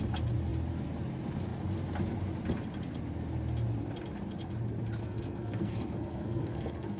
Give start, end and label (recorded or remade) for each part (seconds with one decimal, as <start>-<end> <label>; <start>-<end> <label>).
0.0-5.0 recorded; 5.0-7.0 remade

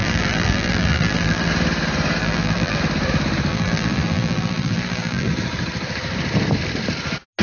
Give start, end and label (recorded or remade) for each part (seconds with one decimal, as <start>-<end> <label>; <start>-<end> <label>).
0.0-1.5 remade; 1.5-2.2 recorded; 2.2-2.8 remade; 2.8-3.5 recorded; 3.5-5.3 remade; 5.3-7.4 recorded

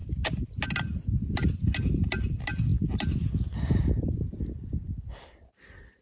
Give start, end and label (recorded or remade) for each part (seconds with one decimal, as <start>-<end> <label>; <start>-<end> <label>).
0.0-6.0 recorded

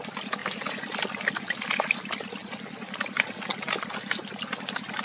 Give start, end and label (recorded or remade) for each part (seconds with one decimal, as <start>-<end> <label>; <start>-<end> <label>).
0.0-5.0 recorded

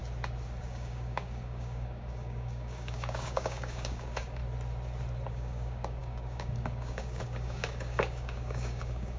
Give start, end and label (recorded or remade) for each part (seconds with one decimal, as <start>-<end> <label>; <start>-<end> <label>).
0.0-0.6 recorded; 0.6-4.4 remade; 4.4-5.3 recorded; 5.3-9.2 remade

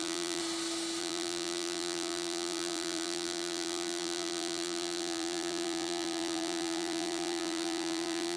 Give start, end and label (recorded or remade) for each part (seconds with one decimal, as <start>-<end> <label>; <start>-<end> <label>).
0.0-0.4 remade; 0.4-1.0 recorded; 1.0-8.4 remade

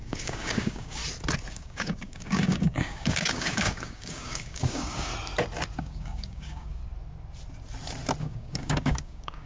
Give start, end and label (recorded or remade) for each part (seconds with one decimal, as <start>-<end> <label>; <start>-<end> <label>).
0.0-1.0 remade; 1.0-1.5 recorded; 1.5-5.1 remade; 5.1-5.8 recorded; 5.8-6.8 remade; 6.8-8.2 recorded; 8.2-9.5 remade